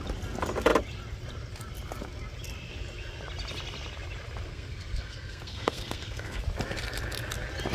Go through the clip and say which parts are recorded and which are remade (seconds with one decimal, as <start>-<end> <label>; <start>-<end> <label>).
0.0-4.5 recorded; 4.5-6.4 remade; 6.4-7.7 recorded